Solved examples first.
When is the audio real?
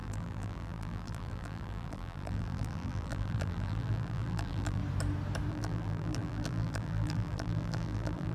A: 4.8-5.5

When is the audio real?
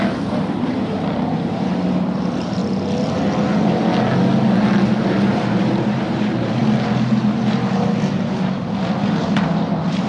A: 2.6-5.0; 6.6-9.2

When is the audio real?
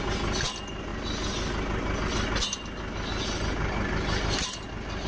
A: 0.0-5.1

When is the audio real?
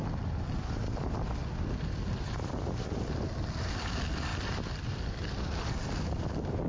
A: 0.0-6.7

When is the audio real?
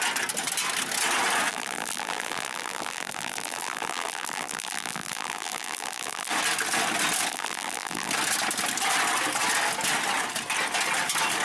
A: 0.0-1.5; 6.3-7.3; 8.1-11.4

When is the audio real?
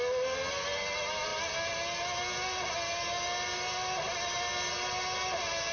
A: 0.0-5.7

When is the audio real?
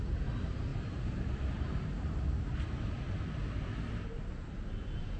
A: 0.0-0.7; 2.9-5.2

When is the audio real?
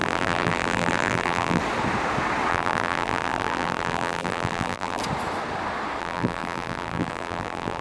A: 1.6-2.5; 5.0-6.0